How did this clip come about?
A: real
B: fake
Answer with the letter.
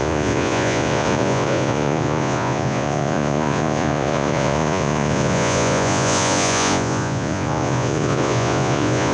B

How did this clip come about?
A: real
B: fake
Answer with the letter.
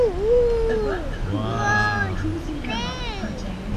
A